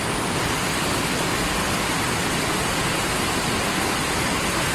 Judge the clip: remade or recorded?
recorded